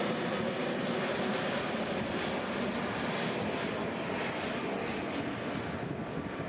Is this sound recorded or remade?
recorded